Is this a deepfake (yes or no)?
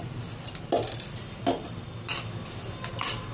no